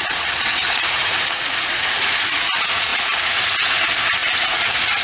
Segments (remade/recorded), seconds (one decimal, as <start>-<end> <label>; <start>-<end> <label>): 0.0-5.0 remade